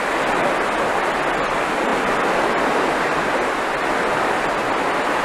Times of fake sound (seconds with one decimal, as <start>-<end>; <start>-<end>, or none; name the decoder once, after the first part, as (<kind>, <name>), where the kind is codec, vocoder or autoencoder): none